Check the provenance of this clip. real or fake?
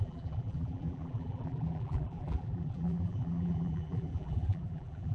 fake